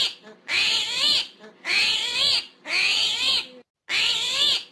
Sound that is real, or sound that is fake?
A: real